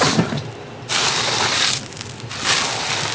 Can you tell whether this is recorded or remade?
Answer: recorded